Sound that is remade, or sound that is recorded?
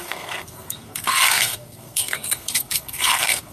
remade